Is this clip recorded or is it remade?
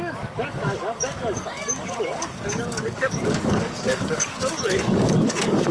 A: remade